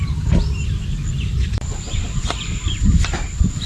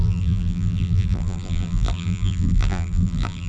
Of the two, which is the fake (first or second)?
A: second